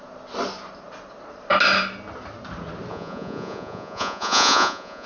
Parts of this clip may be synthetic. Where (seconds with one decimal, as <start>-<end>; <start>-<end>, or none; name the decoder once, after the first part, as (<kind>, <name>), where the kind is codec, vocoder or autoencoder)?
2.9-5.1 (vocoder, Vocos)